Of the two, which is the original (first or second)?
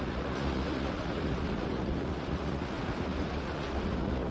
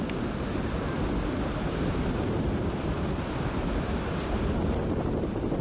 second